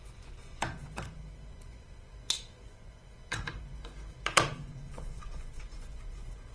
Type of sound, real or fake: fake